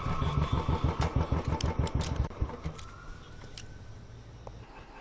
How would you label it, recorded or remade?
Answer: recorded